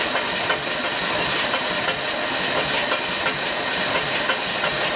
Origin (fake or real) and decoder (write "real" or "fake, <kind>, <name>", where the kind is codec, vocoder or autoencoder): real